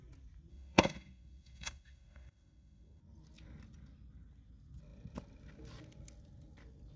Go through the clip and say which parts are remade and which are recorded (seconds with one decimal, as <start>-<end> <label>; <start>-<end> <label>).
0.0-0.5 recorded; 0.5-3.0 remade; 3.0-7.0 recorded